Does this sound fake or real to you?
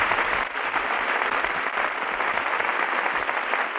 real